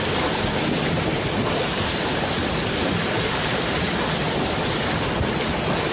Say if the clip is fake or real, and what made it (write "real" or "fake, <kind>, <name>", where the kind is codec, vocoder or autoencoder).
real